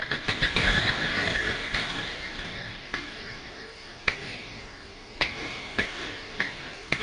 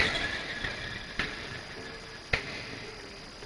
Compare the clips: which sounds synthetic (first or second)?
first